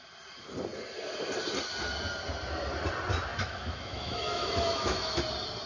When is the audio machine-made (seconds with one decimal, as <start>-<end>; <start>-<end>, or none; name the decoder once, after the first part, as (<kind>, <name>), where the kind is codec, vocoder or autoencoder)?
3.3-5.2 (autoencoder, DAC-VAE)